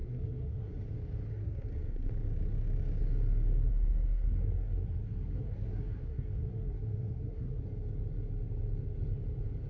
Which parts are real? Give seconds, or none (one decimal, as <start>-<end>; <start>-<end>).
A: 0.8-1.3; 2.1-3.7; 7.6-9.7